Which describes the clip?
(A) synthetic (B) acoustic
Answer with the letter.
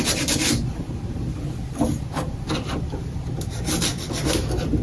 B